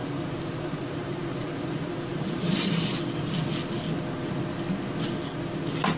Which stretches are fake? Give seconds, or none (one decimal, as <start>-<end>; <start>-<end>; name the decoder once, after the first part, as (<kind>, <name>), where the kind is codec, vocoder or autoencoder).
0.0-2.9 (vocoder, BigVGAN v2)

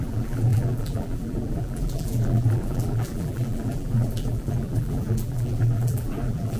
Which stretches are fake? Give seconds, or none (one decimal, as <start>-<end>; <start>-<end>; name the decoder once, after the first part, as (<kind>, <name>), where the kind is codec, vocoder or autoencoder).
0.0-6.6 (vocoder, BigVGAN v2)

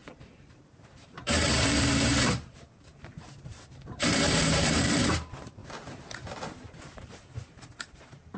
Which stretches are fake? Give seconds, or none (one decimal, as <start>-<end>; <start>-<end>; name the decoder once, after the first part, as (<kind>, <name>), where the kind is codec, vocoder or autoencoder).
0.0-5.6 (vocoder, BigVGAN v2); 6.8-8.4

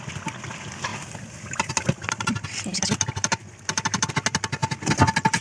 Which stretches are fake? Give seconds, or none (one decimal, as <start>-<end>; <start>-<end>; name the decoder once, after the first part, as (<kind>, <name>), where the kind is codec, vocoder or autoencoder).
0.9-4.1 (vocoder, BigVGAN v2); 4.6-5.4

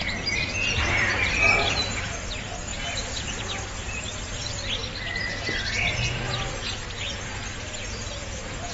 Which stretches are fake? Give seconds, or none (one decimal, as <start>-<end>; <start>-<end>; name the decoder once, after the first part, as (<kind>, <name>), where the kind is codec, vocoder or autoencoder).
2.7-3.5 (vocoder, BigVGAN v2)

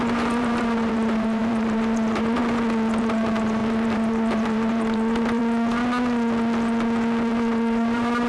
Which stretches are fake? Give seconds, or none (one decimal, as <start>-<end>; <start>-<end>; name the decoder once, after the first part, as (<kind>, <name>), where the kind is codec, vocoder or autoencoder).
0.0-2.4 (vocoder, BigVGAN v2); 3.0-5.4; 7.3-8.3